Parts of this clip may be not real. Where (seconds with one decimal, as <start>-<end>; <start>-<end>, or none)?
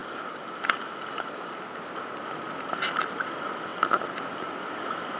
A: none